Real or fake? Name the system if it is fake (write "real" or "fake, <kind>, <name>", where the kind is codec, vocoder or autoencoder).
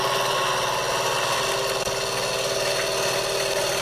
real